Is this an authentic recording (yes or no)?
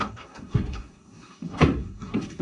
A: no